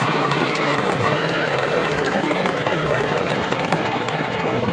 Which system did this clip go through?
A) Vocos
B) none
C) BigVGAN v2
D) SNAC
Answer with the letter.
D